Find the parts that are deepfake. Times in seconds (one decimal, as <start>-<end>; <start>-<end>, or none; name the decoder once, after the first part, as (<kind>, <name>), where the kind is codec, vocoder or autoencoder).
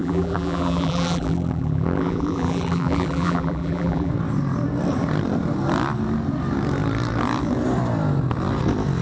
0.0-4.1 (vocoder, BigVGAN v2)